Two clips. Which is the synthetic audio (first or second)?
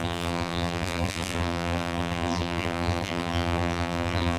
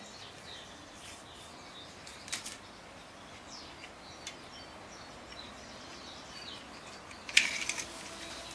first